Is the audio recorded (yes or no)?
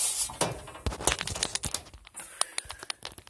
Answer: yes